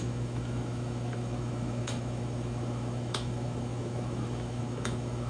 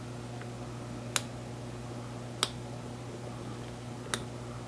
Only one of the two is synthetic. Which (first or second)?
first